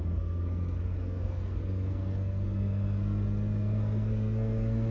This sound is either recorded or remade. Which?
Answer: remade